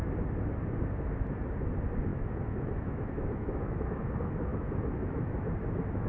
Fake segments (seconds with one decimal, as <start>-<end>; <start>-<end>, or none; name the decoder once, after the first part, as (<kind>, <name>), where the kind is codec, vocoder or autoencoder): 2.1-4.1 (autoencoder, DAC-VAE); 4.5-5.5